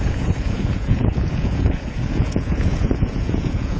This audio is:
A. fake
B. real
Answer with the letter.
A